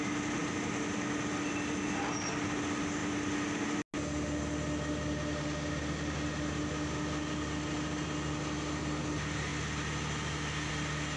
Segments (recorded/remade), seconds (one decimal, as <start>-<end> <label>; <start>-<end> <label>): 0.0-11.2 recorded